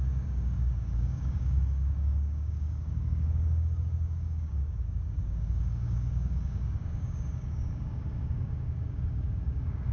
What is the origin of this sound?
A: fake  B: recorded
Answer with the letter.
A